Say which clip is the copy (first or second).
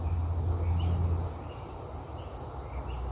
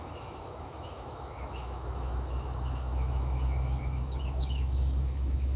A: second